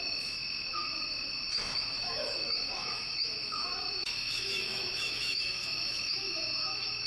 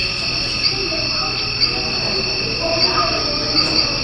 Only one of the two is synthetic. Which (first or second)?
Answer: first